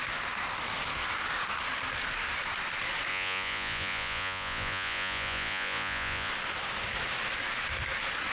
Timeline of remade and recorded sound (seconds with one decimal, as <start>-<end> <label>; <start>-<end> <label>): 0.0-3.1 recorded; 3.1-6.3 remade; 6.3-8.3 recorded